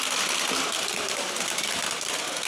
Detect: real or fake real